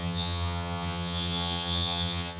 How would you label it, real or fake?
fake